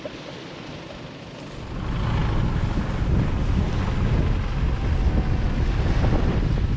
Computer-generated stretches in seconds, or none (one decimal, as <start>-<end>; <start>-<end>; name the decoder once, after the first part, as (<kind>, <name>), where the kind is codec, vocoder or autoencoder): none